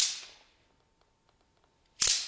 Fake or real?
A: real